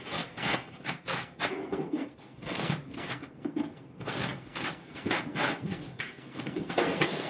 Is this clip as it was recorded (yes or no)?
no